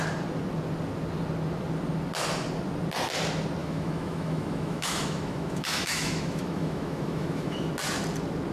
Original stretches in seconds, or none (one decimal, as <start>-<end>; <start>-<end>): 0.0-3.6; 7.7-8.5